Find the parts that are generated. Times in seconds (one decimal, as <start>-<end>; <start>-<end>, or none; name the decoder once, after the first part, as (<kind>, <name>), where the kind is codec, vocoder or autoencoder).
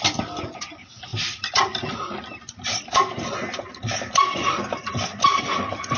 1.1-2.9 (vocoder, BigVGAN v2)